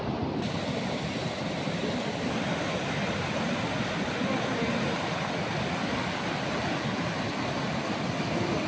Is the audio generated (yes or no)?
no